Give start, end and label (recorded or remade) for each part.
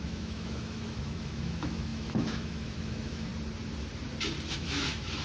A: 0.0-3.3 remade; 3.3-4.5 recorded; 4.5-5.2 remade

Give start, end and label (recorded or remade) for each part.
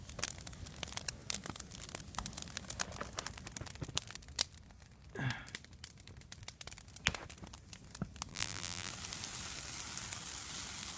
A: 0.0-8.3 recorded; 8.3-8.9 remade; 8.9-11.0 recorded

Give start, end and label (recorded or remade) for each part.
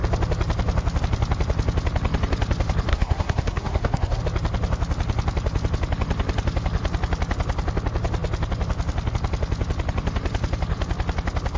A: 0.0-2.9 recorded; 2.9-4.2 remade; 4.2-11.6 recorded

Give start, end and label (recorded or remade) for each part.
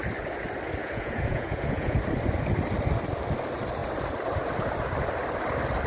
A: 0.0-0.8 recorded; 0.8-2.0 remade; 2.0-5.9 recorded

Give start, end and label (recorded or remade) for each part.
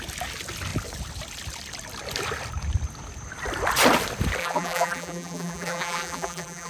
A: 0.0-4.4 recorded; 4.4-6.7 remade